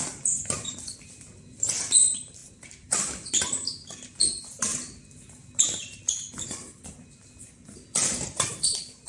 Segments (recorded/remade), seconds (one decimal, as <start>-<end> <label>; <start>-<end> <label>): 0.0-9.1 recorded

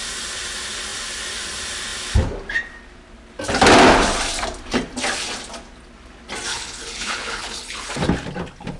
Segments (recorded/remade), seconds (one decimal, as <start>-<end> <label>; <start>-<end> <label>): 0.0-6.5 recorded; 6.5-7.9 remade; 7.9-8.8 recorded

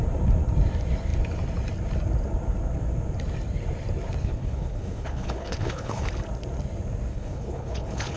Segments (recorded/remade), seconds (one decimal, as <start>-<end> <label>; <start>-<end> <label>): 0.0-4.2 recorded; 4.2-6.1 remade; 6.1-7.1 recorded; 7.1-8.2 remade

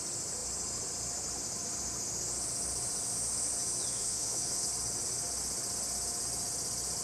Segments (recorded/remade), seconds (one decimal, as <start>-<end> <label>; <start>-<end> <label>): 0.0-3.9 recorded; 3.9-4.7 remade; 4.7-7.0 recorded

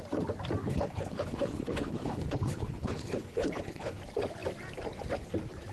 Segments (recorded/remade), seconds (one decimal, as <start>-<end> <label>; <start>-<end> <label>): 0.0-0.6 recorded; 0.6-4.0 remade; 4.0-5.7 recorded

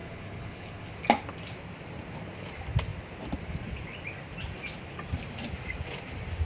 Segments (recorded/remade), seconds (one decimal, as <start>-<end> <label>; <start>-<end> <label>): 0.0-0.9 remade; 0.9-6.5 recorded